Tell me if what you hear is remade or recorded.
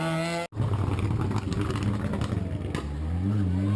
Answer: recorded